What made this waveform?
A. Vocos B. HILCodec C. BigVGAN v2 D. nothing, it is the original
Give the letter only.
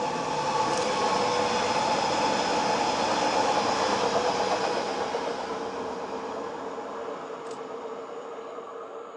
D